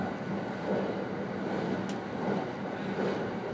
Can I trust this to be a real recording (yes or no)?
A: yes